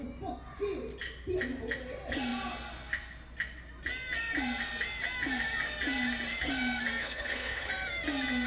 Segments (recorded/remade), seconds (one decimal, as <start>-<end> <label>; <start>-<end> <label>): 0.0-7.0 recorded; 7.0-7.7 remade; 7.7-8.5 recorded